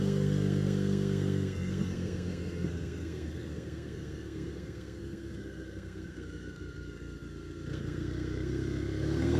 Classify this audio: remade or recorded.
remade